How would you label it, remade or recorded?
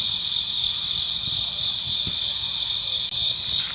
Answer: recorded